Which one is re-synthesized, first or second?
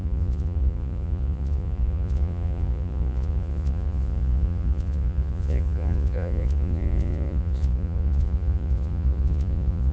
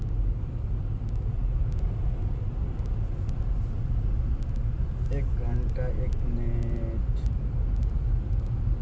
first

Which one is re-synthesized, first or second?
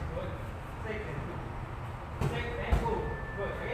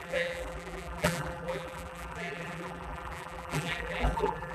second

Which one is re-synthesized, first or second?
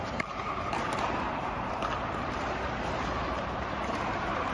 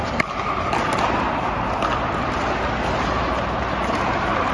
first